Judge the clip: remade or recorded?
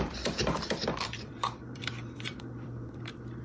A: remade